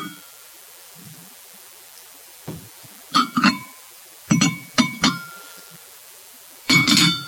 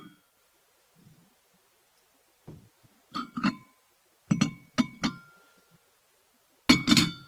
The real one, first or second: second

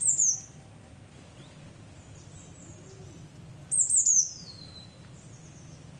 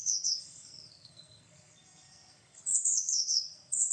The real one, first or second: first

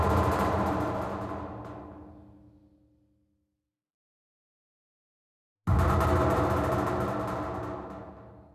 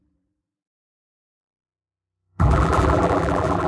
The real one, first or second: first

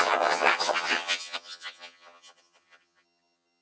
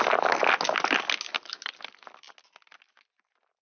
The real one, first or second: second